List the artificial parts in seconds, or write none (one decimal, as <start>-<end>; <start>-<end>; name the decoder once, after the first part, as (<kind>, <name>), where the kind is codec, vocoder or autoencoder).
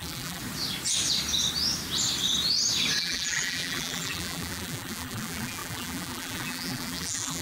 0.0-0.4 (vocoder, BigVGAN v2); 3.0-7.4